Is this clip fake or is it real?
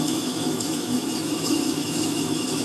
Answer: fake